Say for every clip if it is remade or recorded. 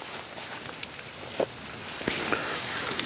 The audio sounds recorded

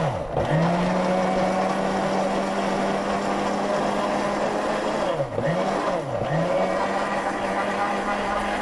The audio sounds recorded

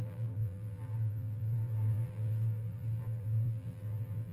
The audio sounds remade